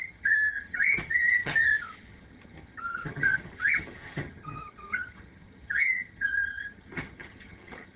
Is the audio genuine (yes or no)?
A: no